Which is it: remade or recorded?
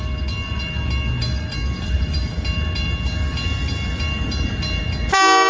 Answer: recorded